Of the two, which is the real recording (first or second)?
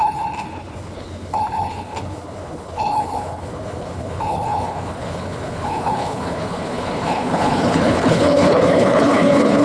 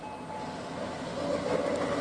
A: second